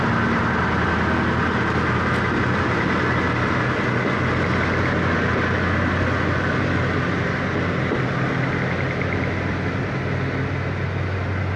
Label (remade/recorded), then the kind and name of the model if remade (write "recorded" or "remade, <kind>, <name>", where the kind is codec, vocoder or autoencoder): recorded